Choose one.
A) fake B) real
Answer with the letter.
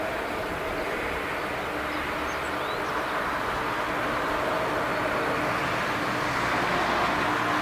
B